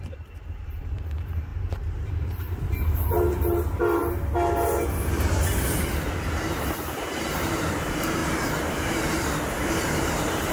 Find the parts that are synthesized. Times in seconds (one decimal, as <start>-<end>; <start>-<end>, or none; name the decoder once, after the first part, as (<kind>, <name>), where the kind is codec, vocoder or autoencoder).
0.0-4.0 (vocoder, BigVGAN v2); 5.7-8.2; 9.1-10.5